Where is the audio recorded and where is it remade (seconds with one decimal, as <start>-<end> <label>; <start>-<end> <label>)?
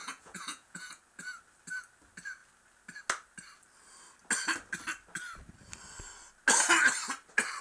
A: 0.0-1.0 remade; 1.0-7.6 recorded